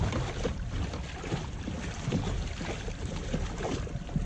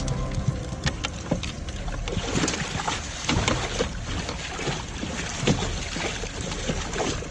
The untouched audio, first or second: second